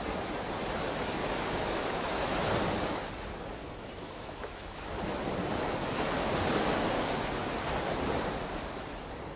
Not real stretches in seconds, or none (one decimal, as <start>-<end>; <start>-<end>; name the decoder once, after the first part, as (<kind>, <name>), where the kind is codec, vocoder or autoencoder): 1.2-2.5 (autoencoder, DAC-VAE); 3.6-5.0